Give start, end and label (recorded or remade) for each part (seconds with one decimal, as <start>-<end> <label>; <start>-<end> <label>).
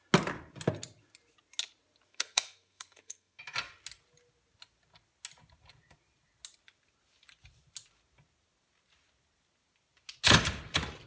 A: 0.0-2.1 recorded; 2.1-3.4 remade; 3.4-11.1 recorded